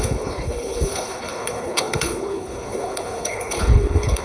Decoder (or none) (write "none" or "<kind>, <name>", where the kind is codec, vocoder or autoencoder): codec, HILCodec